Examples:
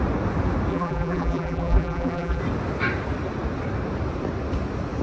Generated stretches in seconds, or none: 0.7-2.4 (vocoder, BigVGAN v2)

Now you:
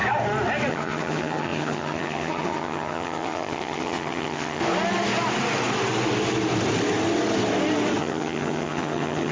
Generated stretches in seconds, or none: 0.7-4.6 (vocoder, HiFi-GAN); 8.0-9.3